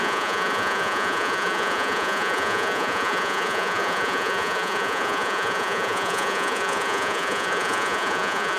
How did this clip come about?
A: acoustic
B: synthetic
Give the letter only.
B